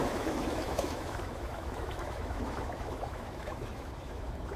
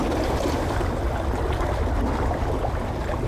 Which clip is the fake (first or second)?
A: first